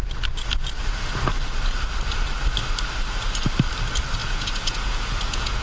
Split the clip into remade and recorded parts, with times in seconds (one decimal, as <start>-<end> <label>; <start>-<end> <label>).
0.0-4.2 recorded; 4.2-5.6 remade